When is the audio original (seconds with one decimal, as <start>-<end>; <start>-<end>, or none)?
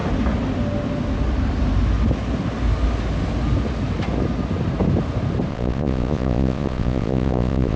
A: 0.0-5.5